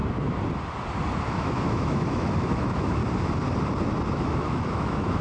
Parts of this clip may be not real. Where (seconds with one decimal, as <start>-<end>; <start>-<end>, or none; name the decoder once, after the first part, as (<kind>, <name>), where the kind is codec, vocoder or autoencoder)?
1.3-3.0 (autoencoder, DAC-VAE); 4.1-5.2